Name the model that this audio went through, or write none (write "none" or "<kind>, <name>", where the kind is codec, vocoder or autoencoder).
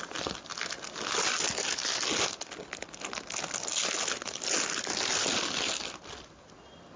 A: none